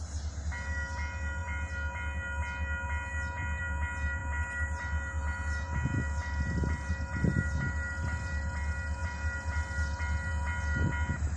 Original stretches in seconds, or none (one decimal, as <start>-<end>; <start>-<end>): 0.0-11.4